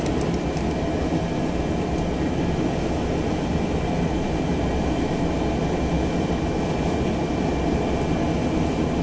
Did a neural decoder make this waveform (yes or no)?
no